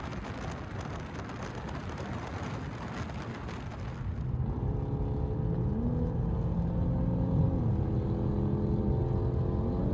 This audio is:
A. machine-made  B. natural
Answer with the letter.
B